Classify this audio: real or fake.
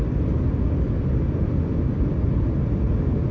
real